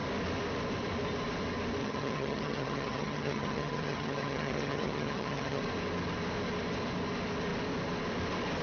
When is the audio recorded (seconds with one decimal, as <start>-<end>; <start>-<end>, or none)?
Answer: 0.0-1.8; 5.6-8.6